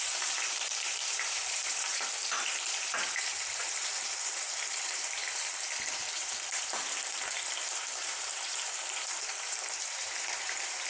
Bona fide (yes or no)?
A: no